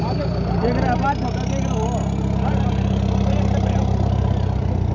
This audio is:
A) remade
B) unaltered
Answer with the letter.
B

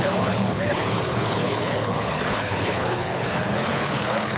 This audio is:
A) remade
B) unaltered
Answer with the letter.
A